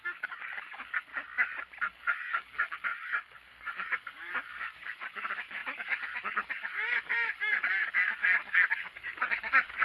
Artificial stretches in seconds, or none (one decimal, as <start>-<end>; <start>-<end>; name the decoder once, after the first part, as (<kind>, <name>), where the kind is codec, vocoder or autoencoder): 0.0-1.1 (codec, DAC); 1.8-9.8

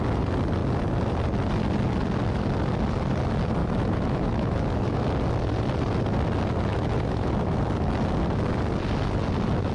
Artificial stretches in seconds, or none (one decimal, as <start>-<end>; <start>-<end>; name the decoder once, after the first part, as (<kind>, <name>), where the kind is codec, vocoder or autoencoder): 3.6-5.0 (autoencoder, DAC-VAE); 6.7-7.3

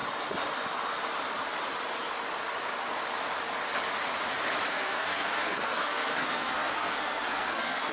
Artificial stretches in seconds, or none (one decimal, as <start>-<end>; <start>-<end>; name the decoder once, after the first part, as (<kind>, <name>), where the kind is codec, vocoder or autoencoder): 4.7-7.9 (codec, SNAC)

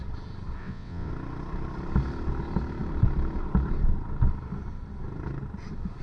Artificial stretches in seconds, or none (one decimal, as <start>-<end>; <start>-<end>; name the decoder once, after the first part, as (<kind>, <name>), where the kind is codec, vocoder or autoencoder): 0.6-1.1 (vocoder, WaveNeXt)

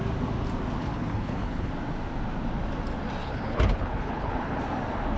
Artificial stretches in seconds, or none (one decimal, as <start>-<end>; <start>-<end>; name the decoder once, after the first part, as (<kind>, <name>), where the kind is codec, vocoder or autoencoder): 0.8-1.7 (codec, HILCodec); 3.2-4.6

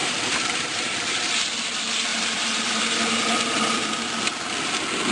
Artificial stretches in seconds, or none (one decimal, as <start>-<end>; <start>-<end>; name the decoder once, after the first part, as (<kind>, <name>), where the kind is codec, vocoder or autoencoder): 0.0-1.3 (vocoder, BigVGAN v2); 2.1-2.8

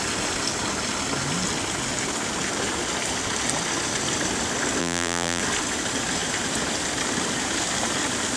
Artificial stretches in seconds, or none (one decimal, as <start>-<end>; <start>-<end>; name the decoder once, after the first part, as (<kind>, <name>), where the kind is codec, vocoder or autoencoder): 4.8-5.4 (vocoder, BigVGAN v2)